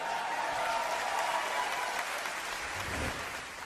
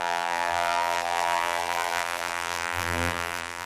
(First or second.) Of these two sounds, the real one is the first